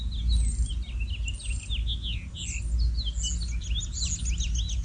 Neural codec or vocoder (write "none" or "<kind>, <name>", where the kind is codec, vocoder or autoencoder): none